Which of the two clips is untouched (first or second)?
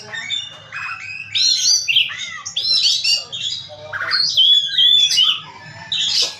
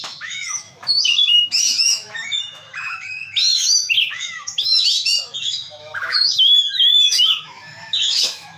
first